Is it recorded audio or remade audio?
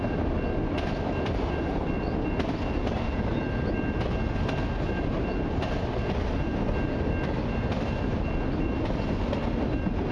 recorded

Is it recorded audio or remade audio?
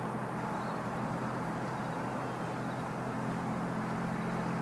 recorded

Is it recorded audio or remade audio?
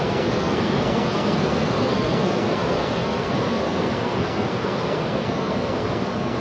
remade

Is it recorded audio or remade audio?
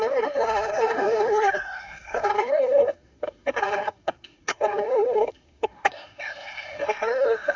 remade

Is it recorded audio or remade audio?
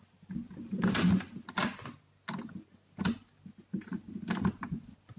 recorded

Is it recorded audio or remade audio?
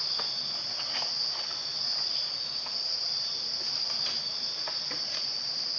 recorded